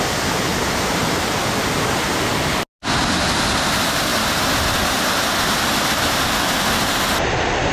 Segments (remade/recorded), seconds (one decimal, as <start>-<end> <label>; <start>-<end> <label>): 0.0-0.5 recorded; 0.5-1.7 remade; 1.7-7.7 recorded